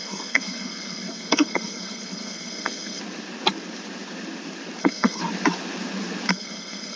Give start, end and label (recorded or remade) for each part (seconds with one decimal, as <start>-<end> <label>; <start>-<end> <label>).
0.0-3.0 remade; 3.0-4.8 recorded; 4.8-5.2 remade; 5.2-6.3 recorded; 6.3-7.0 remade

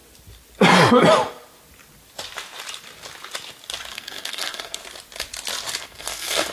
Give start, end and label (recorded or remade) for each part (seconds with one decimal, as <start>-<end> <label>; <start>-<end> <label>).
0.0-3.9 recorded; 3.9-4.8 remade; 4.8-5.8 recorded; 5.8-6.5 remade

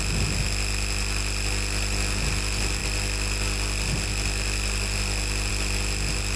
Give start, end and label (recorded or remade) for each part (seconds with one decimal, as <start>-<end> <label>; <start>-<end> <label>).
0.0-6.4 recorded